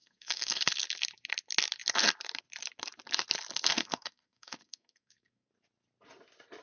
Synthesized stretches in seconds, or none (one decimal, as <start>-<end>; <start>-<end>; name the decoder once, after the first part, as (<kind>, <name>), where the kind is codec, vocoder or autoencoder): 0.0-0.7 (codec, SNAC); 3.8-5.5